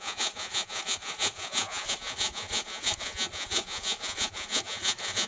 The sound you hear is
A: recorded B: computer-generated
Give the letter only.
B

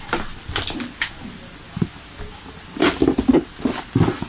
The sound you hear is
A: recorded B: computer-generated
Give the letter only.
A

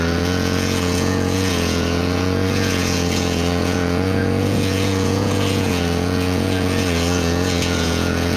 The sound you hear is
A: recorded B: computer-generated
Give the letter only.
B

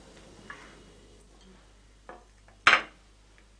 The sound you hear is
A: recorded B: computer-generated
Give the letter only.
A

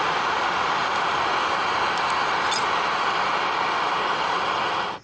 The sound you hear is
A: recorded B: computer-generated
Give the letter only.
A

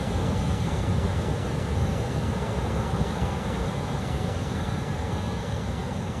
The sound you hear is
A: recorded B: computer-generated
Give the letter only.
B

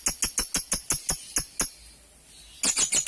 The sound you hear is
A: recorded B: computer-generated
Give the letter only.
A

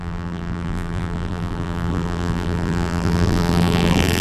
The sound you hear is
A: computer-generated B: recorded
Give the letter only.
A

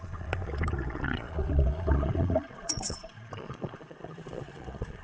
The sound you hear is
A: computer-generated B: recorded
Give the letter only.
A